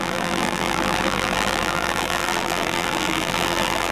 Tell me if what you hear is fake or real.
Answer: fake